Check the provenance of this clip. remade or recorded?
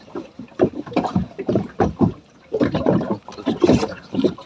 remade